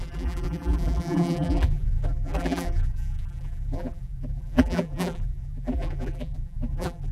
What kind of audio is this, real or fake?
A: fake